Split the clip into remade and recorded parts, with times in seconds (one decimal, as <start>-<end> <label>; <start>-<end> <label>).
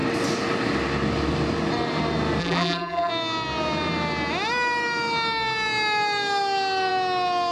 0.0-2.4 recorded; 2.4-3.1 remade; 3.1-7.5 recorded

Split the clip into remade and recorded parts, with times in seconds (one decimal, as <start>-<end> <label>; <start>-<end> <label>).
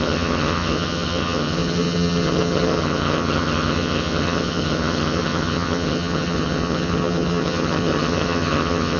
0.0-9.0 remade